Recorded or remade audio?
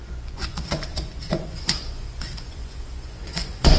remade